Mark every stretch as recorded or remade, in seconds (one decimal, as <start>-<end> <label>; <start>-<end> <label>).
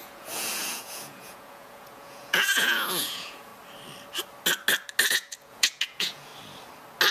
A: 0.0-3.5 remade; 3.5-5.1 recorded; 5.1-6.3 remade; 6.3-7.1 recorded